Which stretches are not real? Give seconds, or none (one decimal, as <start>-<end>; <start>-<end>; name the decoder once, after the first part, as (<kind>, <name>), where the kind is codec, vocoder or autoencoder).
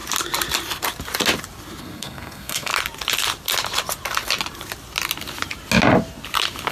1.8-2.7 (codec, SNAC)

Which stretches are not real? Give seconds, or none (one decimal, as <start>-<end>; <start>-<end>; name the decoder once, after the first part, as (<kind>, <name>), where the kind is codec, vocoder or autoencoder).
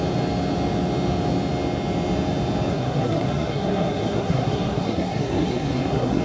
2.7-6.2 (codec, SNAC)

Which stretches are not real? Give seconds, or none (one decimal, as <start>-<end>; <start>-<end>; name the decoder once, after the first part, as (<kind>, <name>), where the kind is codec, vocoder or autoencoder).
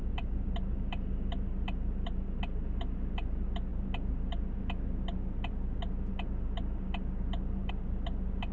none